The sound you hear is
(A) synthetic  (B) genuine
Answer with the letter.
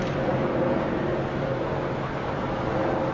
B